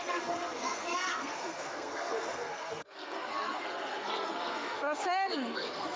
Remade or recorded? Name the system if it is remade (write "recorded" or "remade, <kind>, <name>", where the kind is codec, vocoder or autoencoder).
remade, codec, SNAC